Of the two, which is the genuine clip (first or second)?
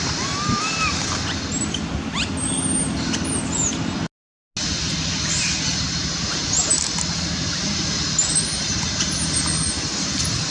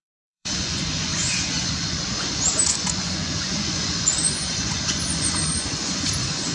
first